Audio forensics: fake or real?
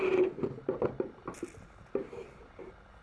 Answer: real